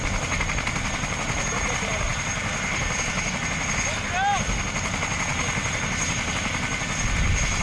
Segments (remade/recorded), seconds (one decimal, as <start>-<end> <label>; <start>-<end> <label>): 0.0-7.6 recorded